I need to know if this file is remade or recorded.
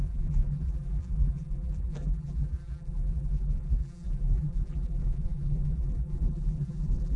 remade